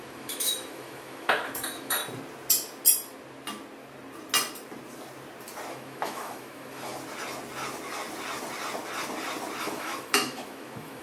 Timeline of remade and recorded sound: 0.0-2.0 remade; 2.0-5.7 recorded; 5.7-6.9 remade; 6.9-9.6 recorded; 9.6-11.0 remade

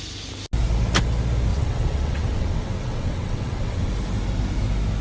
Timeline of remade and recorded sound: 0.0-1.5 recorded; 1.5-3.9 remade; 3.9-5.0 recorded

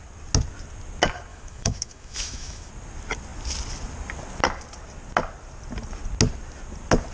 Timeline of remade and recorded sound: 0.0-1.3 recorded; 1.3-2.7 remade; 2.7-7.1 recorded

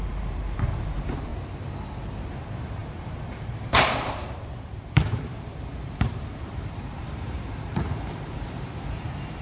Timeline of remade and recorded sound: 0.0-1.3 remade; 1.3-2.0 recorded; 2.0-9.4 remade